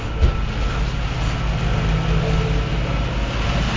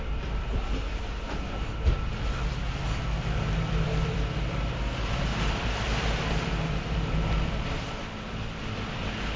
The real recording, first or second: first